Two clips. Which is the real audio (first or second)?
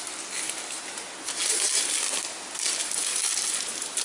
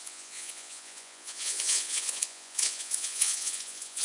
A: first